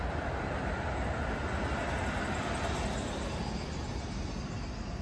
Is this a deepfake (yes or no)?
no